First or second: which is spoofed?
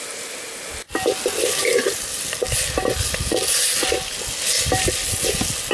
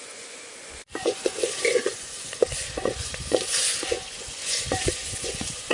second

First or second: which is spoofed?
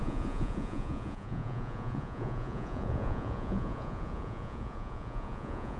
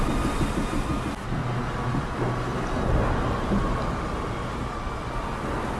first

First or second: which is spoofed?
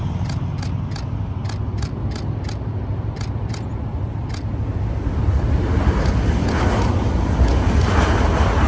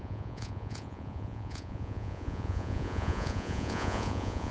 second